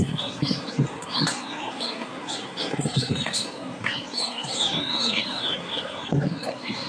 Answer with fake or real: fake